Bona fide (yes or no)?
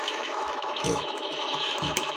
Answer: no